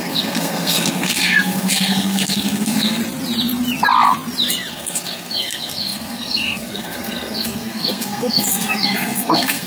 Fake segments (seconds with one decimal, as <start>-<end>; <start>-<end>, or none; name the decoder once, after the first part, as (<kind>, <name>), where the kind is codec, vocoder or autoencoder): 0.0-3.0 (codec, SNAC); 4.7-9.7